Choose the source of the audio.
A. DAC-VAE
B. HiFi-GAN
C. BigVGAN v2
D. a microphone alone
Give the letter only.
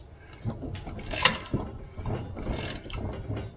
D